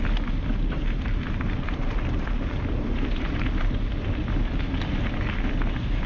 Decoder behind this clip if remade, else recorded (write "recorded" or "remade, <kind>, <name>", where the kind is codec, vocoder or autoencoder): recorded